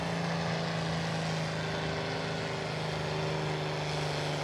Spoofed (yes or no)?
no